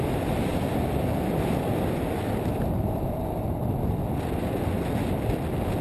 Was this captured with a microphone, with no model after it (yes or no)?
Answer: yes